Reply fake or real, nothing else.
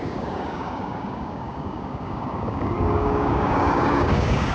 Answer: fake